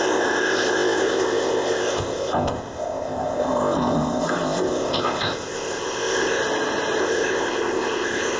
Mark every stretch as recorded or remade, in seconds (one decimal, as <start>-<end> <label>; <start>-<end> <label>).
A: 0.0-6.4 remade; 6.4-7.0 recorded; 7.0-8.4 remade